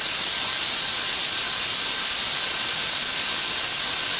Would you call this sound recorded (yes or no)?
yes